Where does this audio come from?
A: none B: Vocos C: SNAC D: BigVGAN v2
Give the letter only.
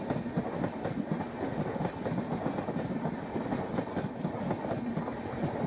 A